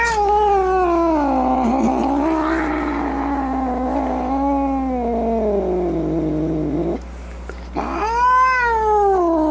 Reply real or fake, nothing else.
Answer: real